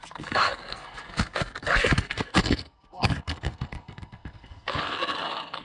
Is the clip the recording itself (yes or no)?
no